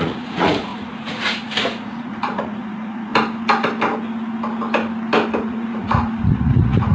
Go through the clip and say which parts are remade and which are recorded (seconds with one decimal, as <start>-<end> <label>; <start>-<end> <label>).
0.0-3.1 remade; 3.1-5.4 recorded; 5.4-6.9 remade